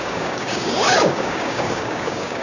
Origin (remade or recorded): remade